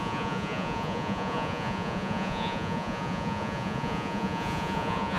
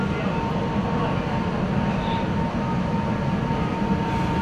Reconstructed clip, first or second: first